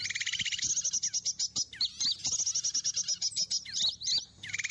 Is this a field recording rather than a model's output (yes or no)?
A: yes